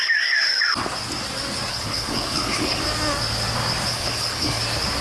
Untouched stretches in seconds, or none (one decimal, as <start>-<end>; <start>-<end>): 0.0-1.7; 2.8-3.9; 4.6-5.0